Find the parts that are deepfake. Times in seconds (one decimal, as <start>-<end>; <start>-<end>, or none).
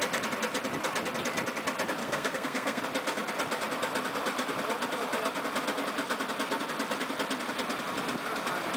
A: 2.0-2.8